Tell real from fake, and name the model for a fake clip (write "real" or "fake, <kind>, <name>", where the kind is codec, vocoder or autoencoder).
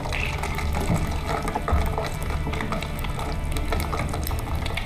real